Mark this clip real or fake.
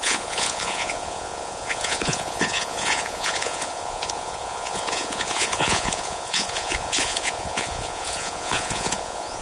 fake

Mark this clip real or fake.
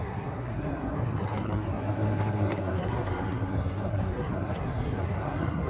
fake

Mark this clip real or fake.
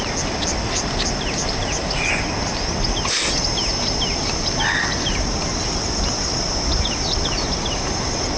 real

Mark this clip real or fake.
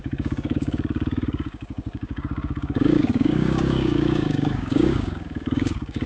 fake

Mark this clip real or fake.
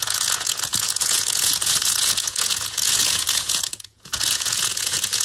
fake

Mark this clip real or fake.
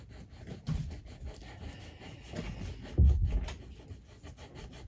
real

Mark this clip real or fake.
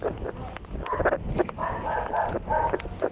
real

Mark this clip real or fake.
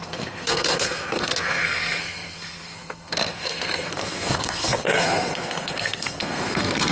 fake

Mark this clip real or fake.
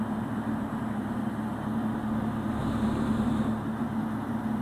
real